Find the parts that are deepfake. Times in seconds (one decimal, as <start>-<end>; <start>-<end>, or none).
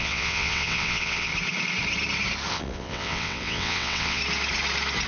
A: 0.0-1.3; 2.5-4.2